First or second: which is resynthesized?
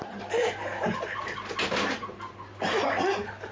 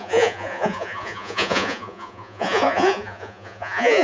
second